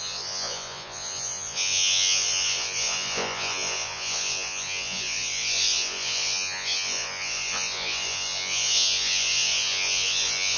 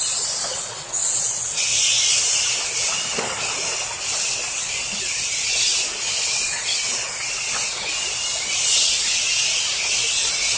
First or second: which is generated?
first